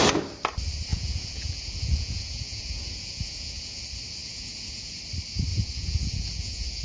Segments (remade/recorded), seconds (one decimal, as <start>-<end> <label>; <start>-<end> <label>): 0.0-0.9 recorded; 0.9-3.8 remade; 3.8-4.2 recorded; 4.2-5.0 remade; 5.0-5.5 recorded; 5.5-6.8 remade